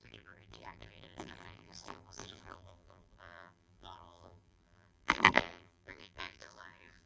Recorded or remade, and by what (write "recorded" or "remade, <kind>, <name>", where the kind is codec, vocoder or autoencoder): remade, vocoder, BigVGAN v2